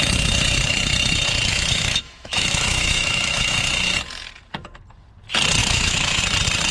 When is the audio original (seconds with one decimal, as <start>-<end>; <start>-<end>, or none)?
0.0-1.5; 3.6-5.6; 6.2-6.7